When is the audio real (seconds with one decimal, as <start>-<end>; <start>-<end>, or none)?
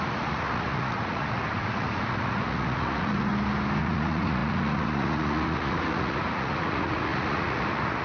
3.3-3.8